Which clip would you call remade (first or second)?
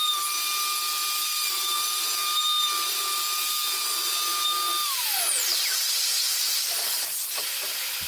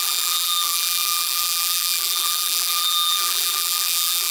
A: second